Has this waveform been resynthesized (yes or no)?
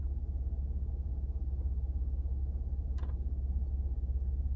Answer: no